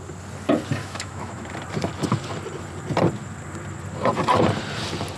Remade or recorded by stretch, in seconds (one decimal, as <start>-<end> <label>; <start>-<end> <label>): 0.0-0.8 recorded; 0.8-1.5 remade; 1.5-5.2 recorded